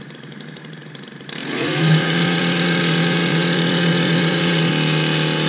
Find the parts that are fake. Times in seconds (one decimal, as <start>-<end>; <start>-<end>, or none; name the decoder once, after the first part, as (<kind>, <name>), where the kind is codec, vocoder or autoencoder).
1.4-4.7 (vocoder, Vocos)